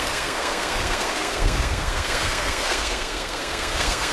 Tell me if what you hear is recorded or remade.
remade